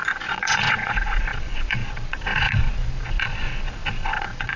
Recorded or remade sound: remade